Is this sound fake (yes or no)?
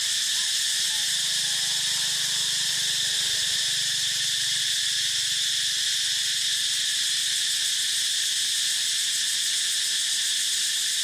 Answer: no